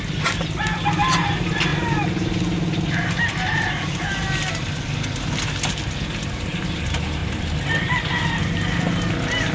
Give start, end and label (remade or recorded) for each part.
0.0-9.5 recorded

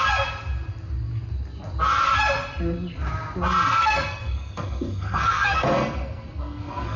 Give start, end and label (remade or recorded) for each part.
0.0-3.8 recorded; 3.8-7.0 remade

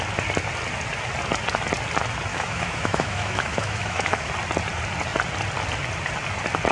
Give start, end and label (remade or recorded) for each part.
0.0-2.3 recorded; 2.3-4.3 remade; 4.3-6.7 recorded

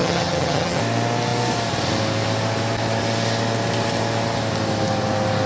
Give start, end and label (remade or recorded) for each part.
0.0-0.8 remade; 0.8-5.5 recorded

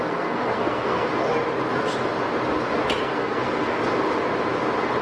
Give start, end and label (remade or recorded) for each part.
0.0-1.1 remade; 1.1-3.0 recorded; 3.0-3.8 remade; 3.8-5.0 recorded

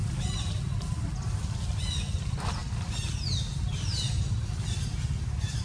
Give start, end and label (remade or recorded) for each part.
0.0-5.6 recorded